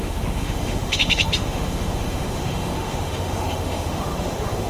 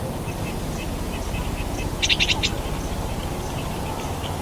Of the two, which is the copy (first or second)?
first